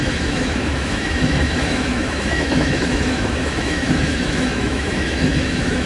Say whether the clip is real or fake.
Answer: fake